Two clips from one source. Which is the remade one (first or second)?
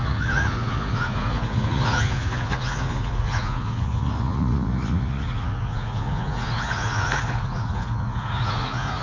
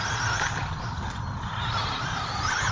first